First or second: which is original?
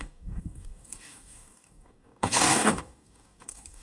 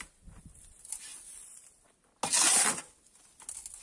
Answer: second